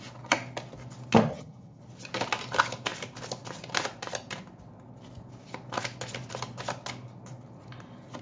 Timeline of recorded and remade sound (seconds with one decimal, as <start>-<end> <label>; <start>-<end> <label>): 0.0-1.3 recorded; 1.3-1.8 remade; 1.8-8.2 recorded